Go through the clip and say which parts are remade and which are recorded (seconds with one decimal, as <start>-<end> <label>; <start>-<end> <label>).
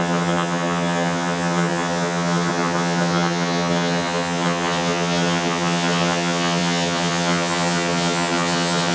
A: 0.0-8.9 remade